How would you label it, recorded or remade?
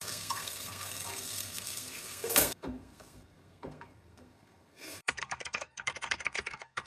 remade